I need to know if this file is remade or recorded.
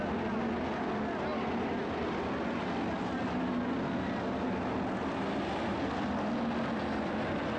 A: recorded